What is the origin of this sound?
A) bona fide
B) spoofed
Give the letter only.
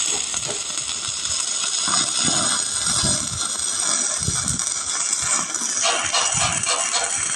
A